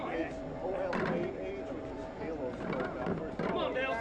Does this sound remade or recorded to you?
recorded